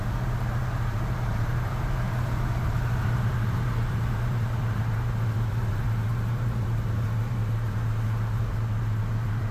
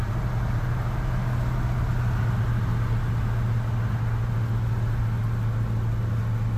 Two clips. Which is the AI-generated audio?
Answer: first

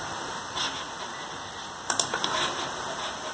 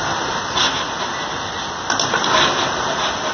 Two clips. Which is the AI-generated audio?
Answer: first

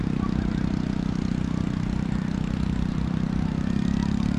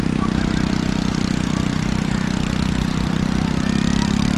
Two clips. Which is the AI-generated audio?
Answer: first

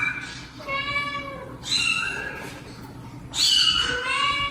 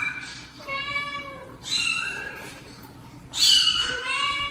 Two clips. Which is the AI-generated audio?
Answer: second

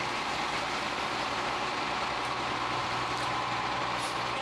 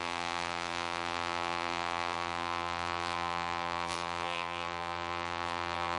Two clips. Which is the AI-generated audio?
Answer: second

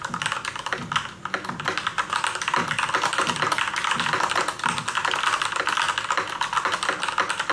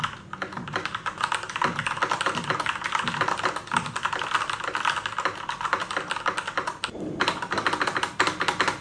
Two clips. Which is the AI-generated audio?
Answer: second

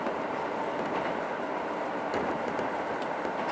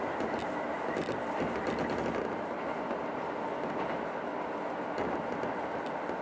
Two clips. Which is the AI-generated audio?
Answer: first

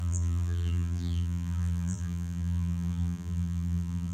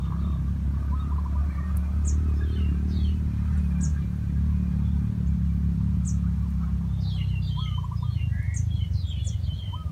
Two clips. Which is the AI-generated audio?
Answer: first